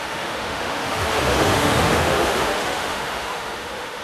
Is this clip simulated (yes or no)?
yes